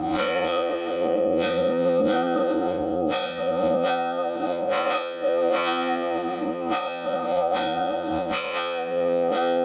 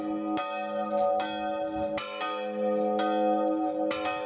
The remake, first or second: first